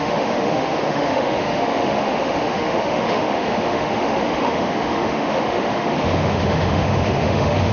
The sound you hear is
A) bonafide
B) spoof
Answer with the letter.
B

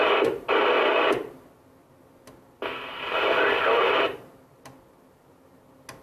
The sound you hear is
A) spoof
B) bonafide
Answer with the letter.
B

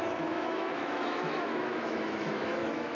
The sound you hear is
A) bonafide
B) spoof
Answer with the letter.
B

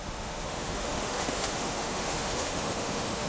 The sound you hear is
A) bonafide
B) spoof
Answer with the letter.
B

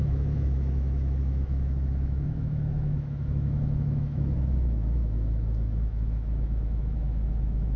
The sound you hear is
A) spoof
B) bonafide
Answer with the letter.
A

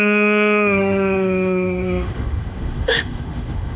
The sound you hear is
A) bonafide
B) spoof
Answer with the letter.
B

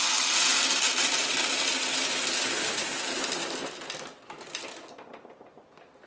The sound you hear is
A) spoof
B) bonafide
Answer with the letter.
B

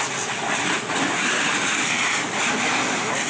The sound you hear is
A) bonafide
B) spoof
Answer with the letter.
A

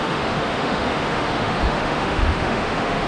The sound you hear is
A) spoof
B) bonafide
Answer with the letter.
A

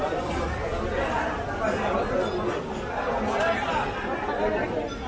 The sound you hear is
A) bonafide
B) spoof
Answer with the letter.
A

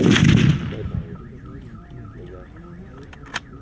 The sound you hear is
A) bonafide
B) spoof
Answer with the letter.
A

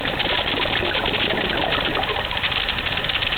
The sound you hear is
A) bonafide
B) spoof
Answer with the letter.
A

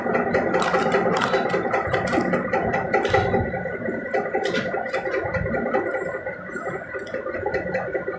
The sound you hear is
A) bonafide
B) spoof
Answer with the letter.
A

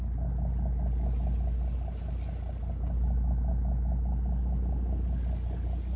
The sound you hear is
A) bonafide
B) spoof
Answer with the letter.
A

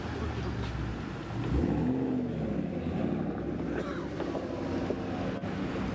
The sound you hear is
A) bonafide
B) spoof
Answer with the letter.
A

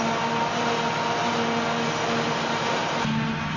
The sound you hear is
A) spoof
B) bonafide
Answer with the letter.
B